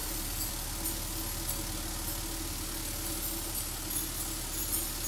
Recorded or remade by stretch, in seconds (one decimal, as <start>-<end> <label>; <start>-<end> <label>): 0.0-0.5 remade; 0.5-5.1 recorded